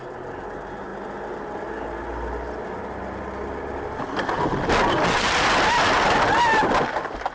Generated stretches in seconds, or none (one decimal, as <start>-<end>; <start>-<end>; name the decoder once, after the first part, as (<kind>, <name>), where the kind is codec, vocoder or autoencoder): none